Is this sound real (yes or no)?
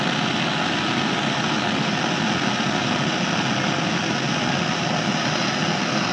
yes